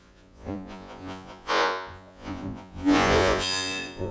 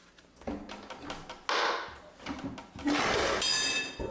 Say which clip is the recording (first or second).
second